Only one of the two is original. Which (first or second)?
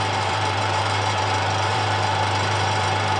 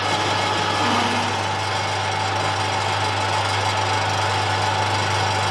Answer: second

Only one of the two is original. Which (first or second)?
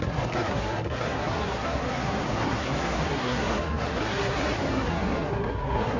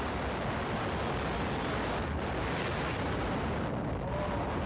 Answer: second